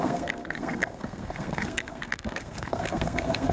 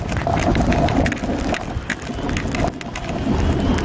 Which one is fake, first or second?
first